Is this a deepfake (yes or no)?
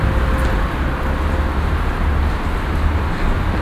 no